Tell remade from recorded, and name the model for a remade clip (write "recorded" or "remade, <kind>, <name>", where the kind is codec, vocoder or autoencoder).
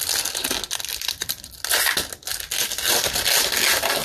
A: recorded